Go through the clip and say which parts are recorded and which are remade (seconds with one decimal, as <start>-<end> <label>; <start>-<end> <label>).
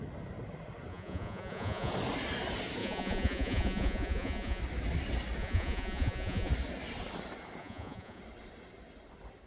0.0-0.9 recorded; 0.9-1.9 remade; 1.9-2.8 recorded; 2.8-4.6 remade; 4.6-5.4 recorded; 5.4-6.5 remade; 6.5-7.6 recorded; 7.6-8.2 remade; 8.2-9.5 recorded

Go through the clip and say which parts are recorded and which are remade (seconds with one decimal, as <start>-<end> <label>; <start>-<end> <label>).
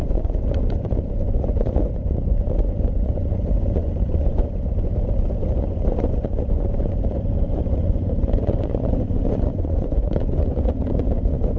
0.0-4.9 remade; 4.9-5.4 recorded; 5.4-11.6 remade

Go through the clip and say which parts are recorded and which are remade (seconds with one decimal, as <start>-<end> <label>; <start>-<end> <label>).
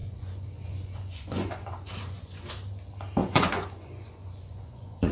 0.0-2.5 remade; 2.5-3.2 recorded; 3.2-5.1 remade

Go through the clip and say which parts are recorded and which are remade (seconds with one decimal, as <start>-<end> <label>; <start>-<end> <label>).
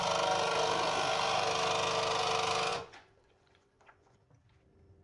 0.0-2.7 recorded; 2.7-4.2 remade; 4.2-5.0 recorded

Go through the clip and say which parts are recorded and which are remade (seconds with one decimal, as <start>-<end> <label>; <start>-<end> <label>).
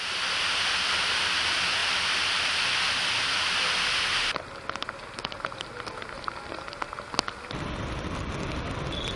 0.0-9.2 recorded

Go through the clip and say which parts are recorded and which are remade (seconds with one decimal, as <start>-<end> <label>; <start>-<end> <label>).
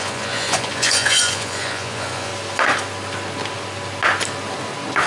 0.0-2.3 remade; 2.3-5.1 recorded